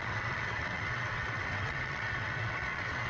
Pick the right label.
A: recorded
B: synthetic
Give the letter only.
B